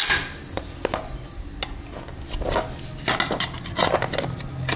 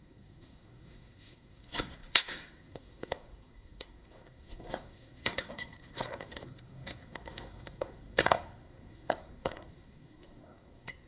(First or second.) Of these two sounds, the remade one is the second